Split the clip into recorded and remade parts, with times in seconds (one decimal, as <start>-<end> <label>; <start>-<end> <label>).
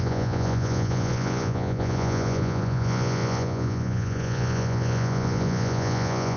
0.0-6.4 remade